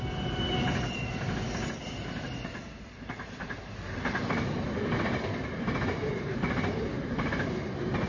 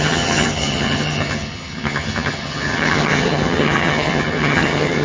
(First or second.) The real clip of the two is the first